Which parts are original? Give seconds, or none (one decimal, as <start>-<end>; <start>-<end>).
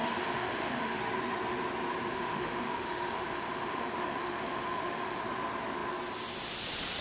1.0-2.1; 5.2-7.0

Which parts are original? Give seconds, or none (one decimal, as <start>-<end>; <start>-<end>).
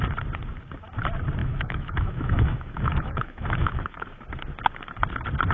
0.0-1.4; 4.2-5.5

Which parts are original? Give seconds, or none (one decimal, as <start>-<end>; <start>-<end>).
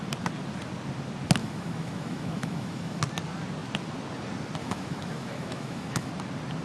0.0-1.4; 3.0-4.6; 6.1-6.6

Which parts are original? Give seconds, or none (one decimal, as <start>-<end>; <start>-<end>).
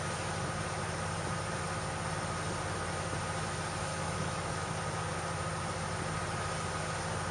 0.0-3.9; 4.7-7.3